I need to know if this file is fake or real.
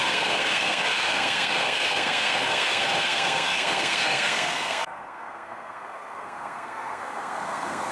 fake